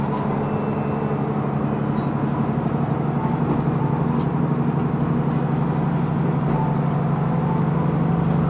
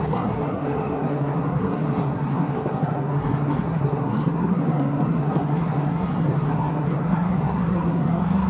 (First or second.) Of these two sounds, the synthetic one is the second